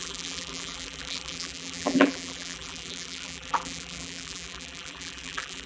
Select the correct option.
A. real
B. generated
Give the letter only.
B